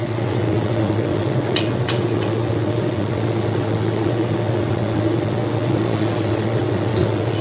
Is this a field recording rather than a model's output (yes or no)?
no